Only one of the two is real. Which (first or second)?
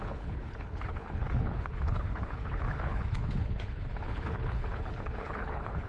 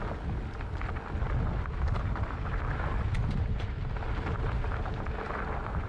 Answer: second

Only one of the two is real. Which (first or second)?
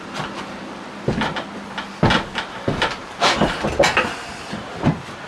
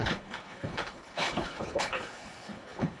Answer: first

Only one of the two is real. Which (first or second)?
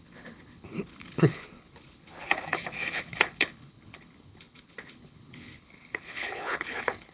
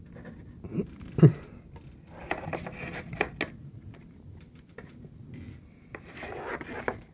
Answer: second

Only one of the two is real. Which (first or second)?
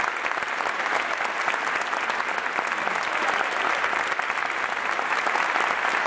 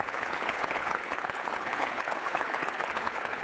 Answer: first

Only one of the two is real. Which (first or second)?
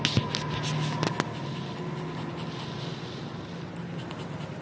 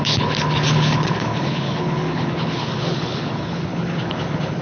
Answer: first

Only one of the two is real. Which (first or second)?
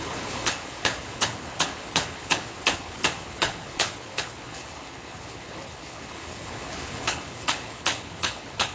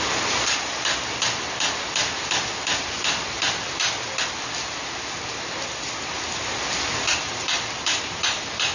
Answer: second